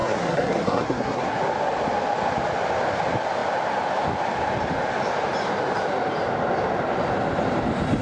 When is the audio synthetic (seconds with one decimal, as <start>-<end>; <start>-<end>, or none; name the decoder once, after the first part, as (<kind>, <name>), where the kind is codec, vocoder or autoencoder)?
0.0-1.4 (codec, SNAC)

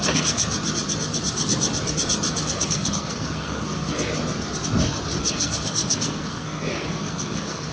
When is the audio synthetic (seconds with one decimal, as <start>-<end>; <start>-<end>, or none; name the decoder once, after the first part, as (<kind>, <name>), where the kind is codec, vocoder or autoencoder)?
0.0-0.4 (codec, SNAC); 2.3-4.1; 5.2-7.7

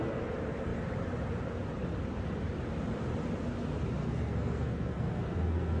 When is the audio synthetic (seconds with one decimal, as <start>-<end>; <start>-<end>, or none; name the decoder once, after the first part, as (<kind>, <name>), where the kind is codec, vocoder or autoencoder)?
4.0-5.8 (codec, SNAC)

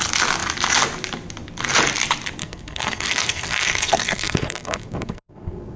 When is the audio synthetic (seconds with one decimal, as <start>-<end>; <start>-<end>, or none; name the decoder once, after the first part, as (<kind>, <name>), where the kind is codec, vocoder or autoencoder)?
2.4-5.8 (codec, SNAC)